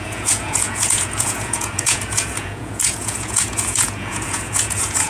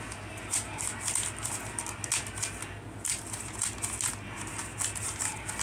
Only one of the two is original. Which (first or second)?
second